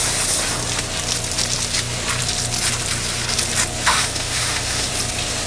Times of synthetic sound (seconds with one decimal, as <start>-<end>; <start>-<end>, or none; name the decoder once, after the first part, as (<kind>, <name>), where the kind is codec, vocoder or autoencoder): 3.8-4.9 (autoencoder, DAC-VAE)